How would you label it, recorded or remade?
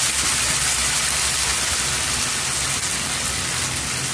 recorded